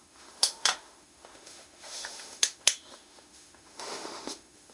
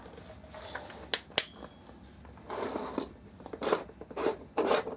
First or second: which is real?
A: second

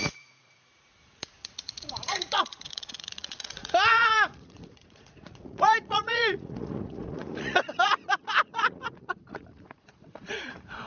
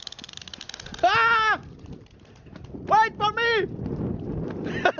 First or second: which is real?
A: second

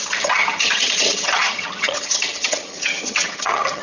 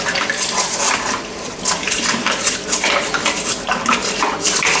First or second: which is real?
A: second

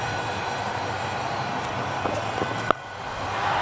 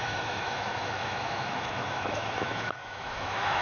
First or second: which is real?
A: first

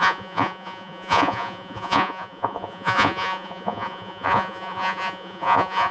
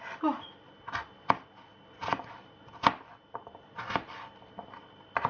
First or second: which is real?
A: second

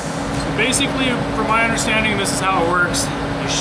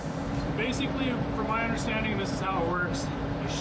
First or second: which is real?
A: first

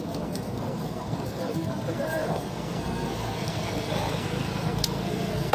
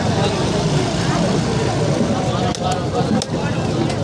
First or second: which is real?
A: second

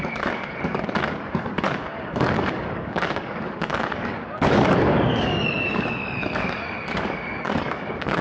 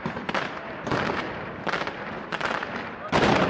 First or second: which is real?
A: second